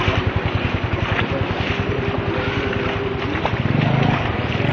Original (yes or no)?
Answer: yes